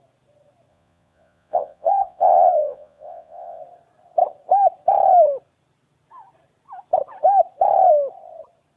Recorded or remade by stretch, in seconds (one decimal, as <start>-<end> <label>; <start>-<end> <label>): 0.0-0.7 recorded; 0.7-3.6 remade; 3.6-8.8 recorded